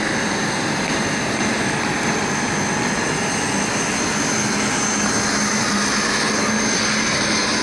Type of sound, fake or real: real